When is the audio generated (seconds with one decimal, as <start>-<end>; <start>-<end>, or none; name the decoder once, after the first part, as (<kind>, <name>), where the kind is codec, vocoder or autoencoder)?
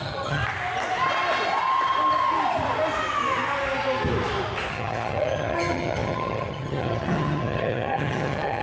0.0-0.4 (vocoder, HiFi-GAN); 4.7-8.6